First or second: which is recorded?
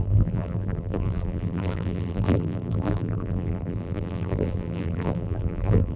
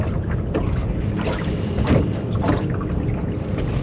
second